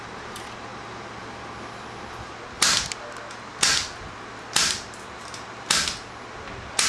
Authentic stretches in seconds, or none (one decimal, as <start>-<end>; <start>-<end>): 0.0-6.9